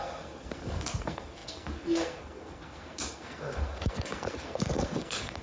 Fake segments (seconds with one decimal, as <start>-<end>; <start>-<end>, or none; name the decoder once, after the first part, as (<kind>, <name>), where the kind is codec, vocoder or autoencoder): 0.0-5.4 (codec, SNAC)

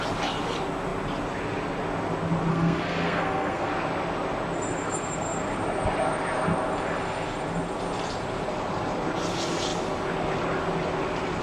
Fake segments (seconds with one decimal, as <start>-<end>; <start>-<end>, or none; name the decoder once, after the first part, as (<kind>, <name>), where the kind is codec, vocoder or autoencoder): 2.5-3.7 (codec, SNAC)

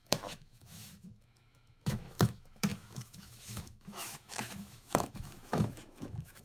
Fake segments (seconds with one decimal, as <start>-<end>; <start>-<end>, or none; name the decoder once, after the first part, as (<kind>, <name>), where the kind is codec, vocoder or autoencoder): 0.0-6.4 (autoencoder, DAC-VAE)

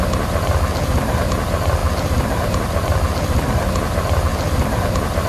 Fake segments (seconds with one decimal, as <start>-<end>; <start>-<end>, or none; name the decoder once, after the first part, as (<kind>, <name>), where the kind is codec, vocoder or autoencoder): 1.8-3.7 (vocoder, BigVGAN v2); 4.3-5.3

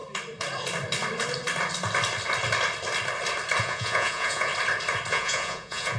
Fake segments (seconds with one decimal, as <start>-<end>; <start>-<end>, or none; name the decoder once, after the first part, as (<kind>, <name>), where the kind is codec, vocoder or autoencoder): 3.6-4.5 (vocoder, Vocos); 5.1-6.0

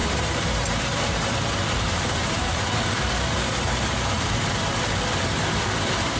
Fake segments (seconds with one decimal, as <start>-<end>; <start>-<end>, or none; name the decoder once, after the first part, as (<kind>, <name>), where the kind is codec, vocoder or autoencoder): 0.0-3.7 (vocoder, BigVGAN v2)

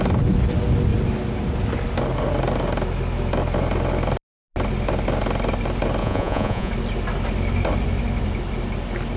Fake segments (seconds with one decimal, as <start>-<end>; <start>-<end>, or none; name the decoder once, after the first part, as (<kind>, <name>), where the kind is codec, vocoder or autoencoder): 6.0-6.7 (vocoder, Vocos)

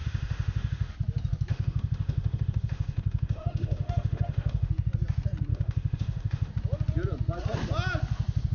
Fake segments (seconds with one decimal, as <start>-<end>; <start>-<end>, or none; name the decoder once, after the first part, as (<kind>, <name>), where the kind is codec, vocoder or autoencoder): 0.0-0.9 (autoencoder, DAC-VAE); 1.5-4.7; 5.5-6.5